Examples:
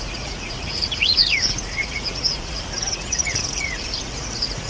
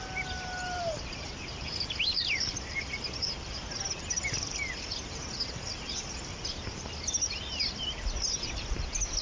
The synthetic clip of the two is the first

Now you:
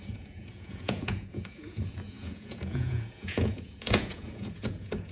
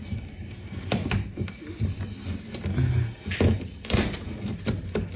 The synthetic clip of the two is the first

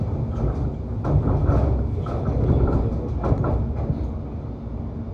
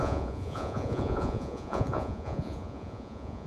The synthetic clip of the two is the second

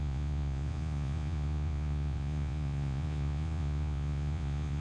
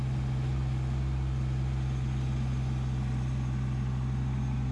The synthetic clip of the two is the first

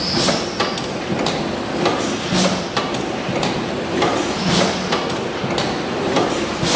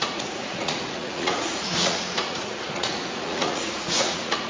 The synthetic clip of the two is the second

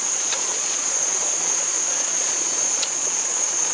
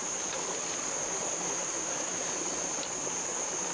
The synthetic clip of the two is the first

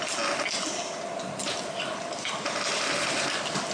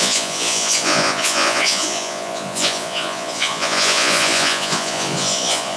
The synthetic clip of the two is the second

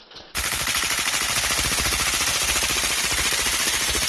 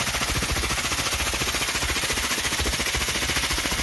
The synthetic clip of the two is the second